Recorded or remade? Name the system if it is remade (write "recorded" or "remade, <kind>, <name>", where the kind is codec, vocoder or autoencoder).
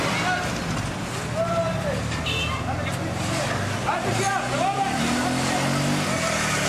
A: recorded